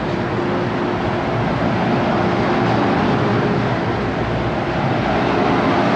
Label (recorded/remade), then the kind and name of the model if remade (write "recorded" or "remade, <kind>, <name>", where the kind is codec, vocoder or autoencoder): recorded